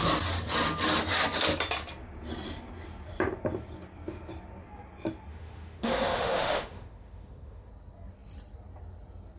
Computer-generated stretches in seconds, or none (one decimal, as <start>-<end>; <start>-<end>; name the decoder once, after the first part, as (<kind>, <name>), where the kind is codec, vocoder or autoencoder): 5.3-7.7 (autoencoder, DAC-VAE)